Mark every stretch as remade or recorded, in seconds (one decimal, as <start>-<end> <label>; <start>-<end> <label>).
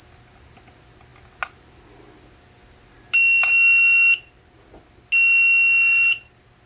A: 0.0-6.7 recorded